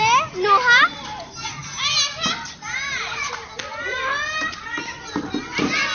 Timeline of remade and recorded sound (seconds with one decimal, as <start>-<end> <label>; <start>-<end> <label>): 0.0-5.9 recorded